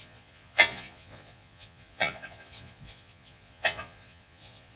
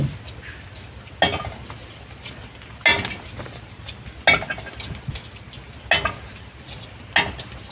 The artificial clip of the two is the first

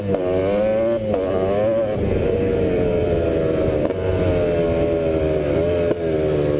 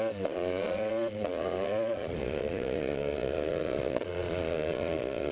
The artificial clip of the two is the second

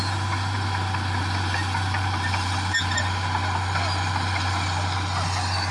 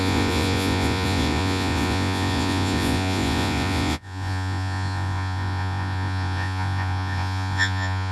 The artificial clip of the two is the second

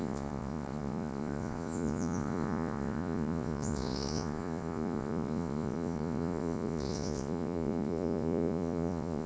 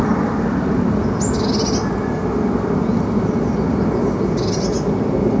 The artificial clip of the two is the first